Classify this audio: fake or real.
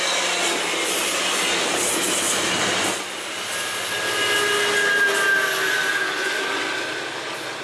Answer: real